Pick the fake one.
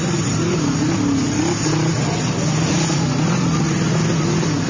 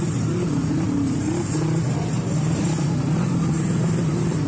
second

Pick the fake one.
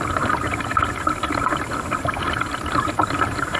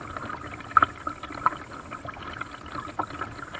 first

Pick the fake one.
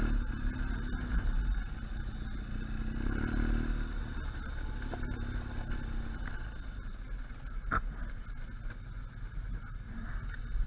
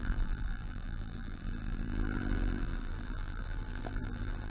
second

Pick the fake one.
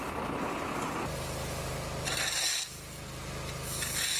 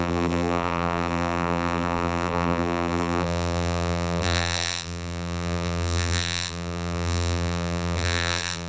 second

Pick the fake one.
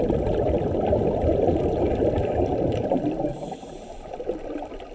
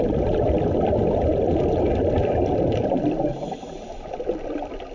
first